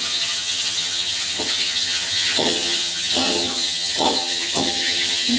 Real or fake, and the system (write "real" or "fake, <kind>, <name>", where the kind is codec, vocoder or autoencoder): fake, vocoder, HiFi-GAN